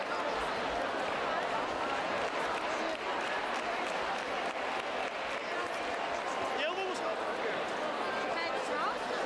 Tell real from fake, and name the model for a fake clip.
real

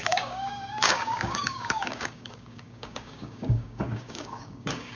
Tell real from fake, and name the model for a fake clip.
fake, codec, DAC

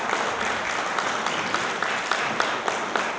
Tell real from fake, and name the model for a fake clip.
real